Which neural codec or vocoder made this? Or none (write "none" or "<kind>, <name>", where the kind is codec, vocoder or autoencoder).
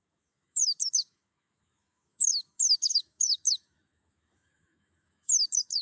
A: autoencoder, DAC-VAE